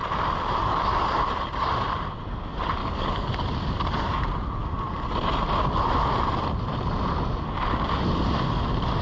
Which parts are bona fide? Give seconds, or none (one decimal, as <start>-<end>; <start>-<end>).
0.0-2.8; 3.3-9.0